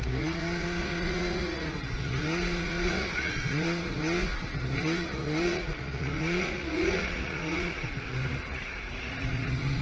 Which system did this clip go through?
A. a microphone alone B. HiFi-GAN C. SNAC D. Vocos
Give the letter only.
D